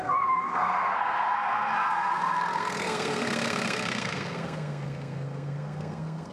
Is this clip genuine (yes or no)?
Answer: no